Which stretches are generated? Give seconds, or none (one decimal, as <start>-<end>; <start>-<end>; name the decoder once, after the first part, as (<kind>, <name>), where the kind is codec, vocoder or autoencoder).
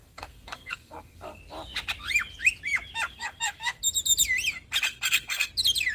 0.0-1.4 (codec, SNAC); 3.1-3.8; 4.9-5.5